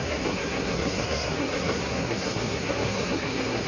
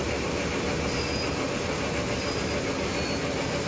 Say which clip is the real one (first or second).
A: second